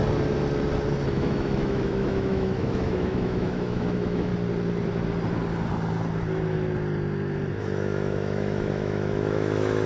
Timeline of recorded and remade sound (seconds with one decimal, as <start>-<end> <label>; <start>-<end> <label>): 0.0-1.1 recorded; 1.1-4.3 remade; 4.3-7.5 recorded; 7.5-9.9 remade